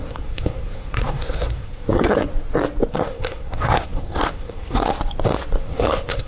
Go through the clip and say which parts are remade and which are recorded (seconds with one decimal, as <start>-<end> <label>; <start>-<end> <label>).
0.0-2.3 remade; 2.3-2.9 recorded; 2.9-4.9 remade; 4.9-5.6 recorded; 5.6-6.3 remade